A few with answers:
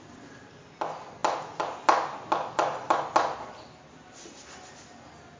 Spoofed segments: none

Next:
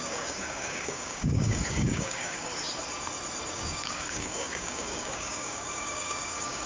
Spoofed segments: 0.0-2.5 (codec, DAC); 3.5-6.7